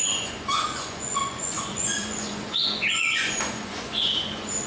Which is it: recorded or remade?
remade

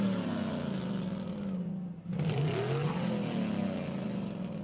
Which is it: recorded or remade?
recorded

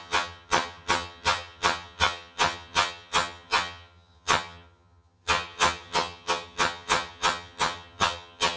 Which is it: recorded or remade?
remade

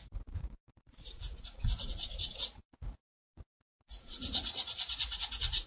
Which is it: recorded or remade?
remade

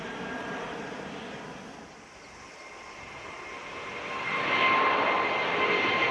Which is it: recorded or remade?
remade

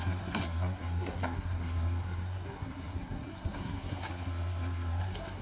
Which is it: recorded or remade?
remade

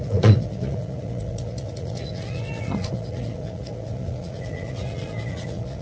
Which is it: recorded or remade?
remade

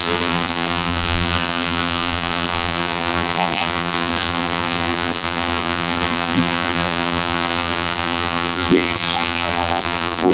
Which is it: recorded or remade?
remade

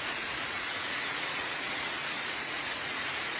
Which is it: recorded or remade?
remade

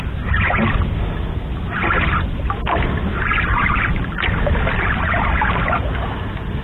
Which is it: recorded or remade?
recorded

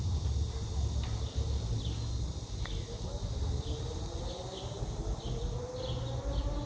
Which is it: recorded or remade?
recorded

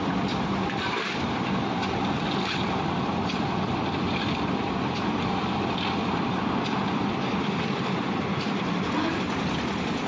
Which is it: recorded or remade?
remade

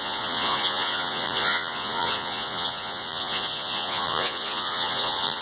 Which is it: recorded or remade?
remade